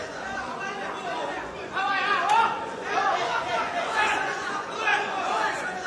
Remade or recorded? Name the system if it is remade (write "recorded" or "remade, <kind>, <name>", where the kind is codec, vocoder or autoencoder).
remade, vocoder, Vocos